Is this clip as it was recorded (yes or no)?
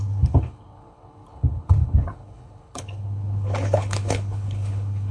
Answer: no